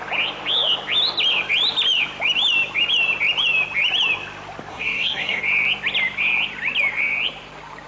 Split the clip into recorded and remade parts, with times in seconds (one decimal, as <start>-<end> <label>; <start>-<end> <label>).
0.0-4.7 recorded; 4.7-5.4 remade; 5.4-7.9 recorded